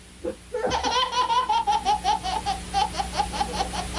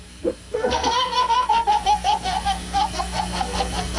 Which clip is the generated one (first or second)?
second